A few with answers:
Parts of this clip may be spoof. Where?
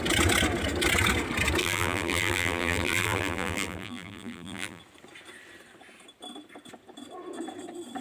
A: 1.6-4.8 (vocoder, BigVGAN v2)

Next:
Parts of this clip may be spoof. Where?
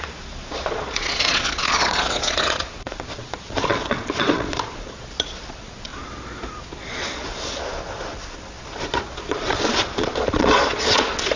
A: 0.0-5.9 (vocoder, Vocos); 6.7-11.4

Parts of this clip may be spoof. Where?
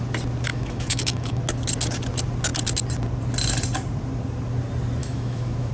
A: 0.5-1.4 (autoencoder, DAC-VAE); 5.0-5.7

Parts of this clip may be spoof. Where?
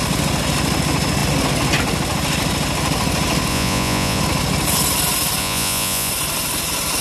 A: 3.5-4.2 (vocoder, Vocos); 5.4-6.1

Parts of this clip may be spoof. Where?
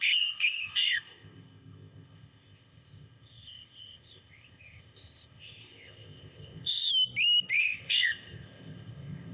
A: 0.0-6.9 (codec, ZipCodec); 7.6-9.3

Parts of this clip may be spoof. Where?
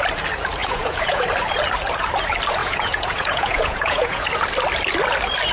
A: 0.6-1.2 (vocoder, Vocos); 2.6-4.3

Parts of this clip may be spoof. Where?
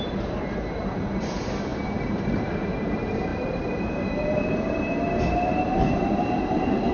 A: 0.0-6.9 (vocoder, BigVGAN v2)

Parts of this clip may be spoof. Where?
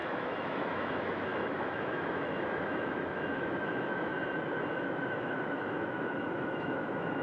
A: 0.0-4.1 (autoencoder, DAC-VAE); 4.7-7.2